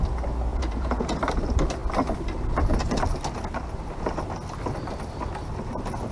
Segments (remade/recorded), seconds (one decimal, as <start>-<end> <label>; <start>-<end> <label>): 0.0-0.5 recorded; 0.5-1.2 remade; 1.2-6.1 recorded